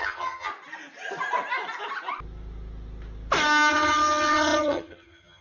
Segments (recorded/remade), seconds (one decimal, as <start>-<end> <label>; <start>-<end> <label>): 0.0-0.5 remade; 0.5-3.7 recorded; 3.7-5.4 remade